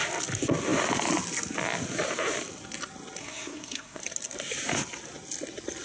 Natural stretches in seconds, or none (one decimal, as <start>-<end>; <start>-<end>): 0.0-3.2; 4.0-5.8